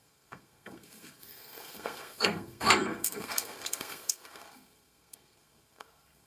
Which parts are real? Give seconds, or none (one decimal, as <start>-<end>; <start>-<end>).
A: none